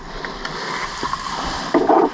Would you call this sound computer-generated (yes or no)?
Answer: yes